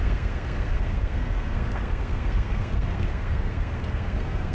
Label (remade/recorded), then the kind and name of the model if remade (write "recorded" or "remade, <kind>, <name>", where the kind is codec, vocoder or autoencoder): remade, codec, SNAC